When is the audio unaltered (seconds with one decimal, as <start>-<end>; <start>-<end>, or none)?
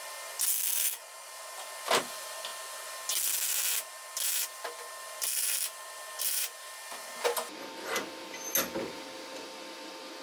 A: 0.0-0.5; 1.0-10.2